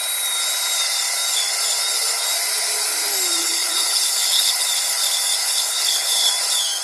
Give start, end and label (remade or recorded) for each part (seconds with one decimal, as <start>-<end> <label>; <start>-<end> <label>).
0.0-3.4 recorded; 3.4-4.7 remade; 4.7-5.4 recorded; 5.4-6.3 remade; 6.3-6.8 recorded